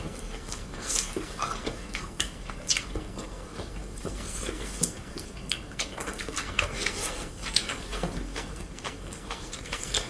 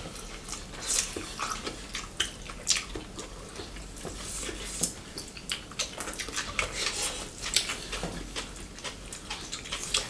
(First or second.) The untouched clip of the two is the second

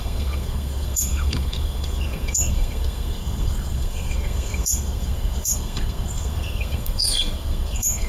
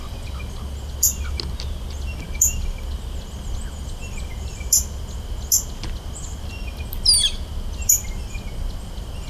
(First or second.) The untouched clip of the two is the second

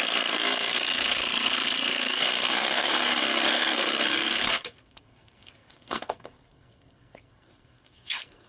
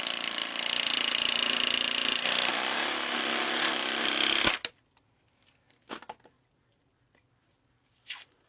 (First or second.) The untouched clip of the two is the second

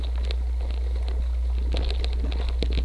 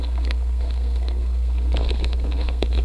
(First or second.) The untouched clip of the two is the first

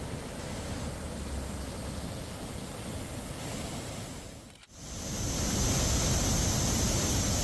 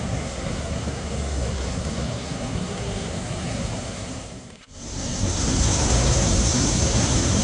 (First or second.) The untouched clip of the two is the first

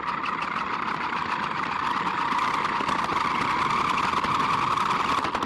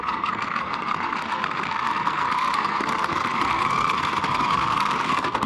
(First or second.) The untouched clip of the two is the first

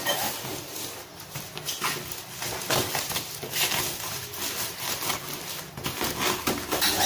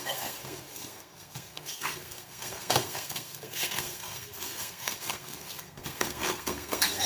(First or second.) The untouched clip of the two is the first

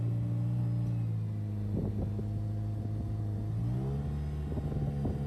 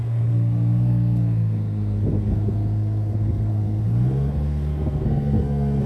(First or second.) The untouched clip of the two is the first